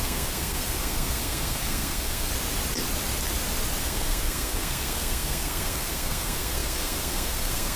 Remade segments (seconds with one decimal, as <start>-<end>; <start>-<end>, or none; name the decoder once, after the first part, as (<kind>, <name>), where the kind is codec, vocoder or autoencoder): 0.0-2.3 (codec, SNAC); 3.8-7.8